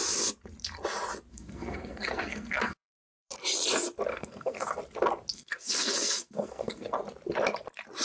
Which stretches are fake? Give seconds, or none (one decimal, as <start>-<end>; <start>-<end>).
1.3-3.3; 4.1-4.7; 5.3-7.0